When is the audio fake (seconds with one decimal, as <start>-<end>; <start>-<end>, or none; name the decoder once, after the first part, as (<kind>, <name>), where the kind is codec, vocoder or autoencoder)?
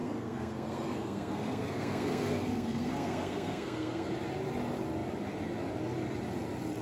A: 0.0-4.1 (codec, SNAC)